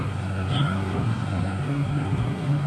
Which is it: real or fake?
fake